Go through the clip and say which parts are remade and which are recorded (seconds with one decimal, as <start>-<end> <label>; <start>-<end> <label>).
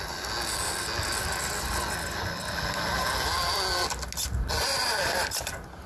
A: 0.0-5.9 recorded